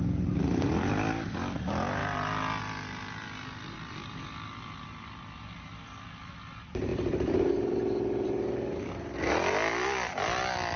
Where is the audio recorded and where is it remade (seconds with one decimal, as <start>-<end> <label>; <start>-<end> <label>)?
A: 0.0-2.0 remade; 2.0-2.6 recorded; 2.6-5.7 remade; 5.7-6.3 recorded; 6.3-10.8 remade